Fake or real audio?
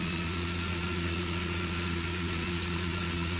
fake